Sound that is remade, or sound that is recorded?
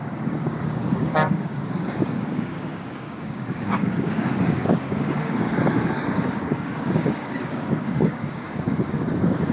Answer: remade